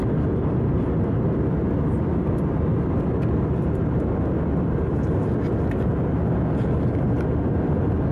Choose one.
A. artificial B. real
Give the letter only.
B